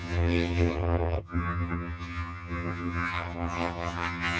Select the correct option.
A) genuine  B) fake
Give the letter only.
B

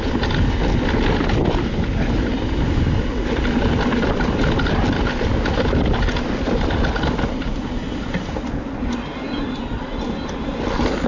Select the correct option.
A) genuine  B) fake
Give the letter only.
A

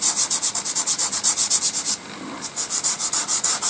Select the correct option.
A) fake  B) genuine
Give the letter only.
B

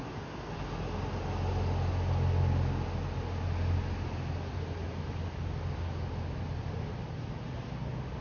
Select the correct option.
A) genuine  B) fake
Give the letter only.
A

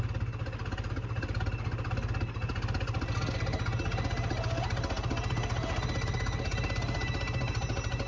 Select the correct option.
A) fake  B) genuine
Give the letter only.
B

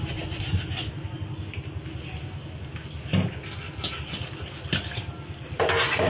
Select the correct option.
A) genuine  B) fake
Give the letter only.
A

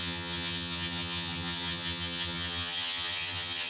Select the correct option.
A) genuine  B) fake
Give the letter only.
B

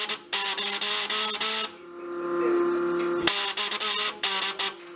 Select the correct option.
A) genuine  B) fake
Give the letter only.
A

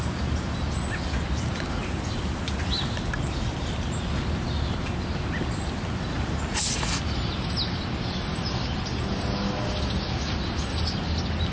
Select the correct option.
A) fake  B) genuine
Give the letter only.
B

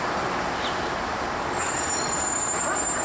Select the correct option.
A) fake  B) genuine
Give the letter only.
B